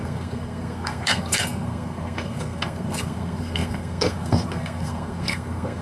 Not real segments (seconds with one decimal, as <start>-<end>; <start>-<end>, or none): 0.0-5.8